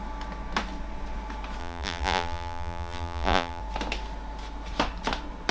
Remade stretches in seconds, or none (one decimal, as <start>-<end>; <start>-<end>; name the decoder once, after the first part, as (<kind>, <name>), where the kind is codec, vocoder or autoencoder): 1.6-3.6 (vocoder, BigVGAN v2)